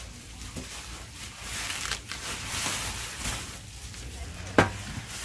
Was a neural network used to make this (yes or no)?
no